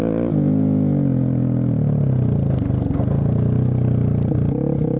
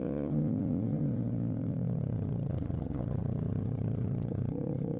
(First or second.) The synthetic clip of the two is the second